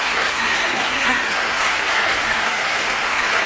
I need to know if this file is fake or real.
fake